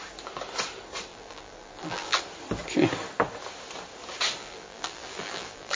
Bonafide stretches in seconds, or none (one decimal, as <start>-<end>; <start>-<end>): 0.0-1.1; 2.2-4.4